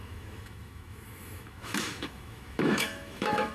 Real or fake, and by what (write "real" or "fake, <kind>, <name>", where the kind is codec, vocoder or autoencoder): fake, autoencoder, DAC-VAE